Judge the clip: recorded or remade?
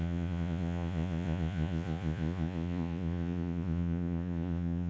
remade